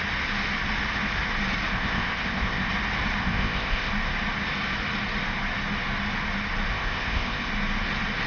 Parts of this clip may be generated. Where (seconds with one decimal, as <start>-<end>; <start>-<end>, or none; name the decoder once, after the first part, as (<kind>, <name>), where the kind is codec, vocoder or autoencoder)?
1.7-2.7 (codec, ZipCodec); 3.2-3.9; 6.7-7.5